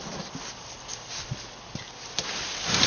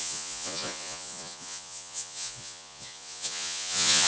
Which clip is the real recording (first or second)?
first